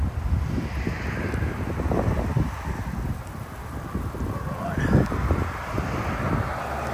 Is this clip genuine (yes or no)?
yes